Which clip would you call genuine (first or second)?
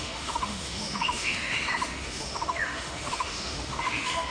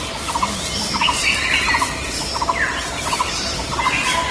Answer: second